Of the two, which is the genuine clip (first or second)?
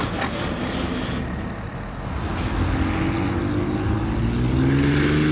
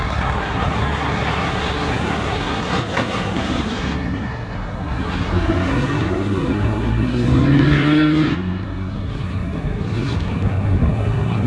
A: first